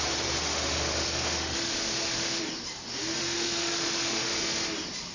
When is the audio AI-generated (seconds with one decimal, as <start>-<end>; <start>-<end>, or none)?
0.4-2.4; 3.2-4.3